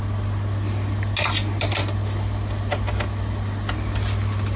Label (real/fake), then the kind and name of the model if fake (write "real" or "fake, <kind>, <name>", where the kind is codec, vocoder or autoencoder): real